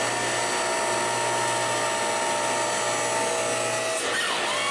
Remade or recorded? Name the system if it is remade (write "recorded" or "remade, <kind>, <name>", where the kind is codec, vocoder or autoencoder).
recorded